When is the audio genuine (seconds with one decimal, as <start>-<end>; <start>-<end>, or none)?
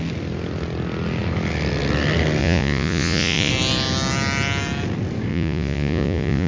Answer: 0.0-2.4; 3.5-5.3